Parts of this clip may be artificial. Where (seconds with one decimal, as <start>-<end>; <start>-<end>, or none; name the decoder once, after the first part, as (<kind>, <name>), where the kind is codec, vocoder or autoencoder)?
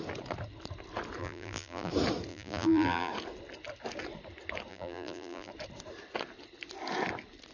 1.2-1.9 (vocoder, BigVGAN v2); 2.3-3.1; 4.7-5.5